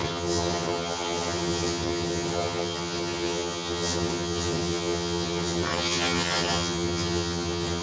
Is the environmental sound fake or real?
fake